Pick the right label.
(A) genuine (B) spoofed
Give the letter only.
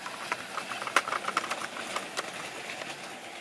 A